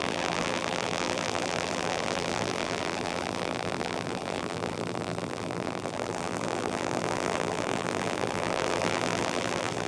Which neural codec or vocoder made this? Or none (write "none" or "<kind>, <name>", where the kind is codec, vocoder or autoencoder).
vocoder, BigVGAN v2